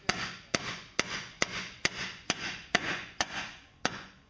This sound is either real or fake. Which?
fake